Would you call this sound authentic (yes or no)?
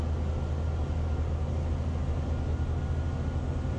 yes